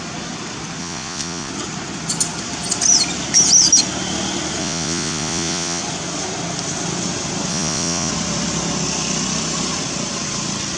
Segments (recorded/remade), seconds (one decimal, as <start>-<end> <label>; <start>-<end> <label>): 0.0-0.8 recorded; 0.8-1.5 remade; 1.5-4.6 recorded; 4.6-5.8 remade; 5.8-7.5 recorded; 7.5-8.1 remade; 8.1-10.8 recorded